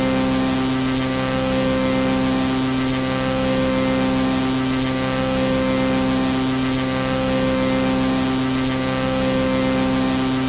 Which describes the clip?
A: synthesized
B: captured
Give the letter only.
B